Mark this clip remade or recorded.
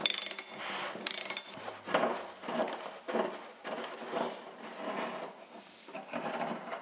recorded